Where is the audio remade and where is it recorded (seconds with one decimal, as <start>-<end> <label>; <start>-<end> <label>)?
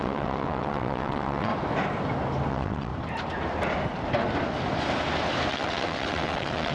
0.0-1.5 remade; 1.5-2.5 recorded; 2.5-2.9 remade; 2.9-5.5 recorded; 5.5-6.7 remade